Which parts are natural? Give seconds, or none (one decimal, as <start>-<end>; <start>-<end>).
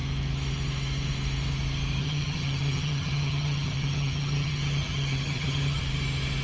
0.0-2.0; 5.8-6.4